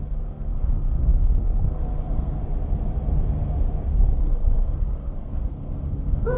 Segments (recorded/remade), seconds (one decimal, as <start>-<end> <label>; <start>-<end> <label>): 0.0-2.4 remade; 2.4-4.2 recorded; 4.2-6.4 remade